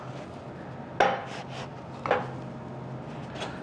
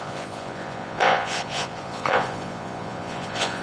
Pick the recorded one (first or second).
first